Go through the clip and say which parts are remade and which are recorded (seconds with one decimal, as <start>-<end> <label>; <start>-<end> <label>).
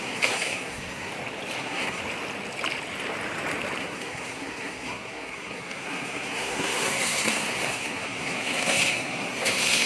0.0-1.1 remade; 1.1-1.6 recorded; 1.6-2.0 remade; 2.0-3.8 recorded; 3.8-9.9 remade